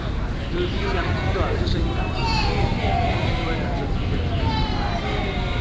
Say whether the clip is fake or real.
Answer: real